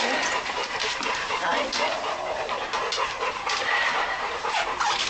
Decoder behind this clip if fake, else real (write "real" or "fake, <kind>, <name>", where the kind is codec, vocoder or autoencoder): fake, vocoder, BigVGAN v2